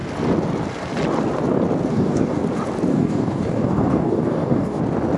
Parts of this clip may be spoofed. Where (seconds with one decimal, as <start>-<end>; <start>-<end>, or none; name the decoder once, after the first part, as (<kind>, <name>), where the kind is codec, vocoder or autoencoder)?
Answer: 1.9-2.4 (codec, DAC); 2.9-4.8